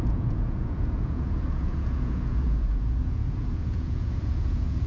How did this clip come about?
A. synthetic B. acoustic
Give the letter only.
A